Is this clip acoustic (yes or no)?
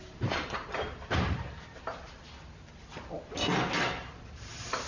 yes